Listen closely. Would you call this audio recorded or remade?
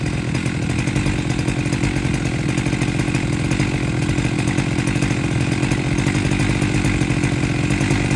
recorded